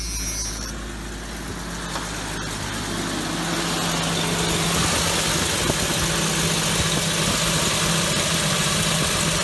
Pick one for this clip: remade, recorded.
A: recorded